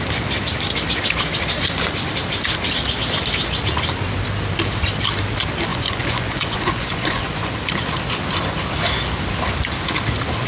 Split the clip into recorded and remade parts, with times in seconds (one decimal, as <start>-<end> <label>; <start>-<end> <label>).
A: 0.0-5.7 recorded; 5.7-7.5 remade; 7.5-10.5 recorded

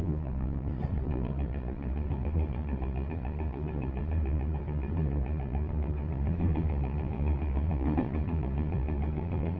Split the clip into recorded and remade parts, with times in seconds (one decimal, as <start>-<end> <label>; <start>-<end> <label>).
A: 0.0-9.6 remade

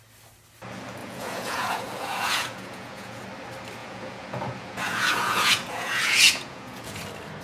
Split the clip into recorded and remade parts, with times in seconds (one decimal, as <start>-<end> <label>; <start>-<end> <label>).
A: 0.0-1.0 recorded; 1.0-3.2 remade; 3.2-3.8 recorded; 3.8-7.0 remade; 7.0-7.4 recorded

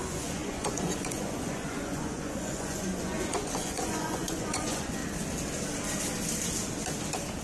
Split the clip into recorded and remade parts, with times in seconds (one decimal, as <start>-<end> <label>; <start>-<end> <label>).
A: 0.0-5.0 remade; 5.0-7.4 recorded